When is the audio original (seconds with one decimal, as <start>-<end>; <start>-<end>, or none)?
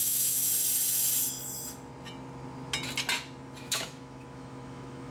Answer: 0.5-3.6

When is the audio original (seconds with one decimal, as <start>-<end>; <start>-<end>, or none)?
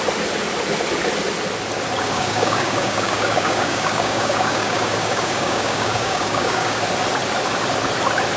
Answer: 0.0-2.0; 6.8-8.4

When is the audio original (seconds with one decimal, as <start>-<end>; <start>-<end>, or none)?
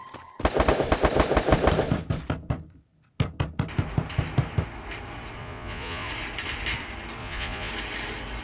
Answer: 0.0-5.4; 6.1-7.2; 7.7-8.4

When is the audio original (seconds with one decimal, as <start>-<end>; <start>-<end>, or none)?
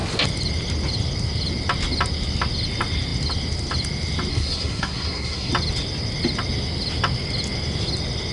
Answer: 0.0-4.3; 5.5-8.3